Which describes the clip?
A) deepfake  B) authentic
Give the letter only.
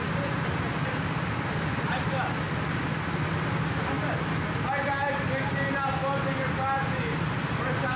B